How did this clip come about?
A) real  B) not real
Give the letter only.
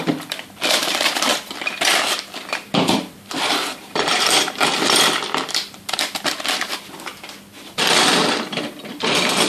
B